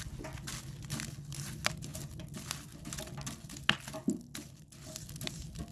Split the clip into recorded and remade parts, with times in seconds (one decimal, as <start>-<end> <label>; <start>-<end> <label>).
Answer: 0.0-5.7 recorded